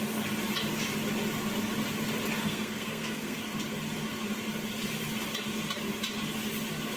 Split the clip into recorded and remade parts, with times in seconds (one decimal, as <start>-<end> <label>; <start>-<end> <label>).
0.0-2.5 recorded; 2.5-3.4 remade; 3.4-7.0 recorded